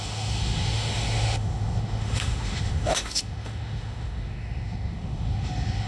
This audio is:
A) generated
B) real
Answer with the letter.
A